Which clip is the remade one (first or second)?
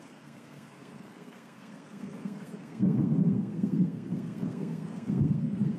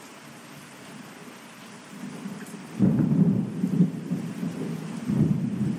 first